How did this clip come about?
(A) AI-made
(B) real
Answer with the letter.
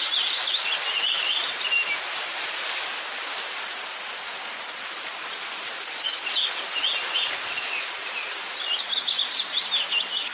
B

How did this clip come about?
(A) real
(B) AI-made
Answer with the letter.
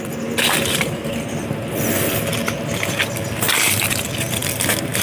A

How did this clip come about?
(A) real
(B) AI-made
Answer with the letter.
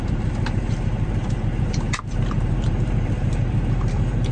B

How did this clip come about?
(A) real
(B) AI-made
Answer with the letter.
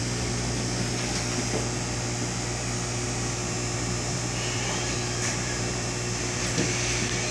B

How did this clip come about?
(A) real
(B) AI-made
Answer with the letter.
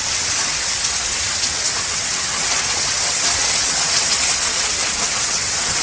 B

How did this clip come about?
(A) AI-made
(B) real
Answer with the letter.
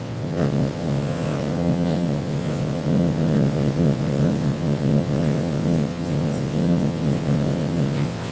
A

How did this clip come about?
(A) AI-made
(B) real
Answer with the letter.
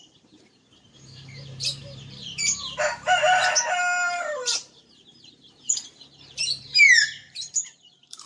A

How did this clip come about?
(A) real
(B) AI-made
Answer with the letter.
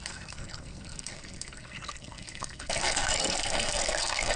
B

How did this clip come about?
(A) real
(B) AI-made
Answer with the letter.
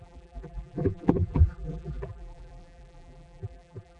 B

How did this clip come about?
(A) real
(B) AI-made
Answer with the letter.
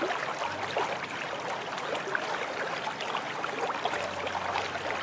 A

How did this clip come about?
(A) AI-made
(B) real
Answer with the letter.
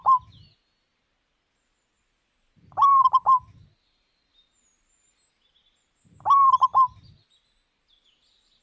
B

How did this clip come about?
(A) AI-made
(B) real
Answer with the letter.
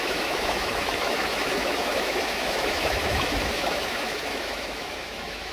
A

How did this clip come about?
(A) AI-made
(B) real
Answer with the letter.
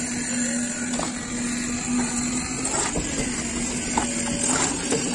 B